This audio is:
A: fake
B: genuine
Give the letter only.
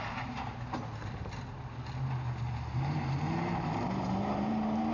B